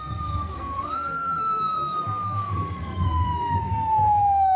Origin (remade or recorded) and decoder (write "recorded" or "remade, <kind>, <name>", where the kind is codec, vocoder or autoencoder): remade, codec, SNAC